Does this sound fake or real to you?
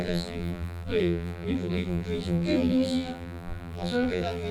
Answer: fake